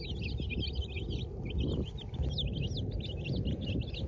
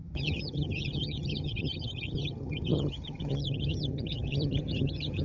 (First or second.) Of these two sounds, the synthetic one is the second